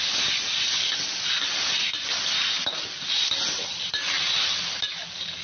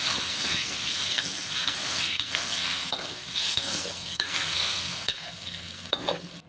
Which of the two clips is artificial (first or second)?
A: second